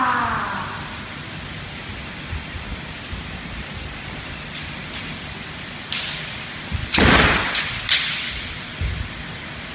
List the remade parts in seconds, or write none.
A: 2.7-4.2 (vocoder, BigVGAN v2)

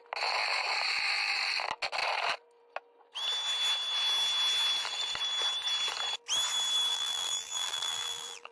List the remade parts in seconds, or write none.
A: 6.9-8.5 (vocoder, BigVGAN v2)

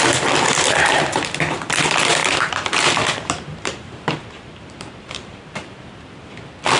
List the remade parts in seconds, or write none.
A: 2.2-6.3 (vocoder, BigVGAN v2)

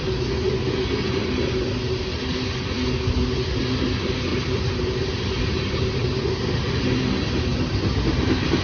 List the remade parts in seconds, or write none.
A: 4.3-6.8 (vocoder, BigVGAN v2)

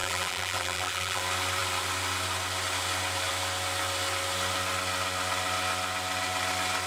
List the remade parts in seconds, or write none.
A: 0.0-1.2 (vocoder, BigVGAN v2)

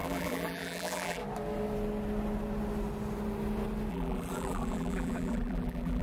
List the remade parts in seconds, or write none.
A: 0.0-1.2 (vocoder, BigVGAN v2); 3.9-6.0

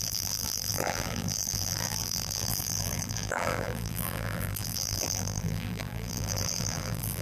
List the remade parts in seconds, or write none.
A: 0.0-7.2 (vocoder, BigVGAN v2)

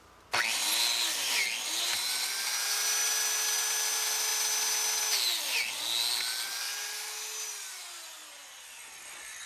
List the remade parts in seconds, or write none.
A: none